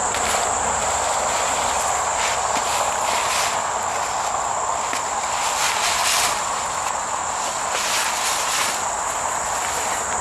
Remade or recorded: recorded